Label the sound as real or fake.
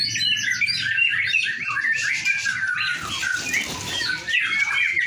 real